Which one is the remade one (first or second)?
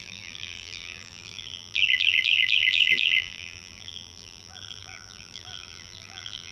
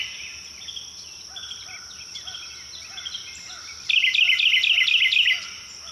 first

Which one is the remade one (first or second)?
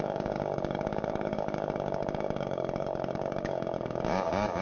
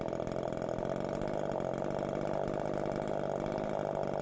first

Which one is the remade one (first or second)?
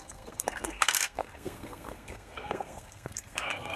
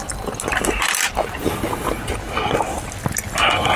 first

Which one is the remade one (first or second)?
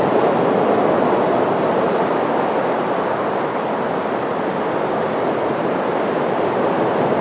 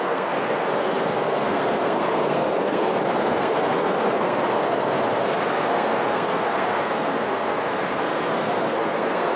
second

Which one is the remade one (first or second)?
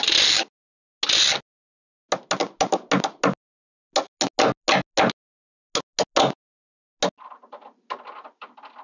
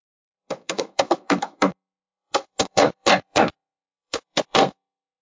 second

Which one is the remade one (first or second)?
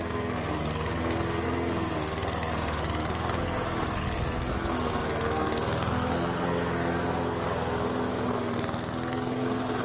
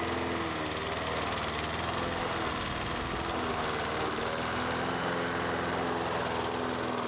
first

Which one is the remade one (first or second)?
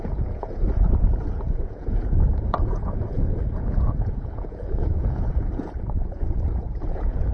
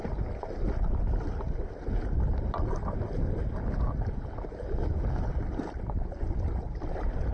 first